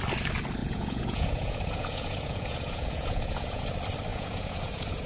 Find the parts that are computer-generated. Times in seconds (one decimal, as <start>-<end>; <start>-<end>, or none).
0.6-3.6; 4.1-5.1